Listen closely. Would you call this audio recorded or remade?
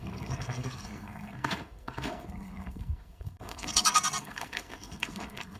remade